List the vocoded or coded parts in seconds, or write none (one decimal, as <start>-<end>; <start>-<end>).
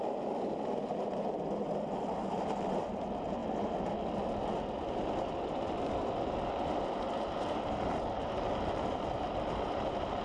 none